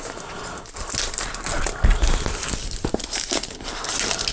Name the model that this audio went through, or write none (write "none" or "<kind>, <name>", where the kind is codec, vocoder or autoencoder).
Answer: none